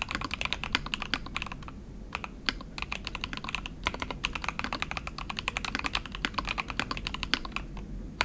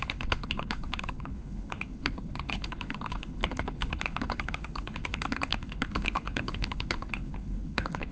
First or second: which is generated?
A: second